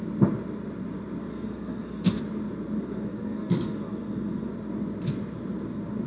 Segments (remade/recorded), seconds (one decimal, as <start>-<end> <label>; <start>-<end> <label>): 0.0-1.3 recorded; 1.3-2.2 remade; 2.2-2.8 recorded; 2.8-4.5 remade; 4.5-6.1 recorded